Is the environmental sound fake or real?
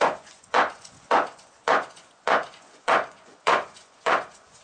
fake